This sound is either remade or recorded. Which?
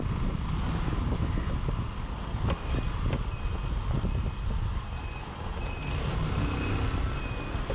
recorded